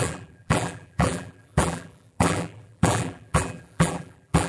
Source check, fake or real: fake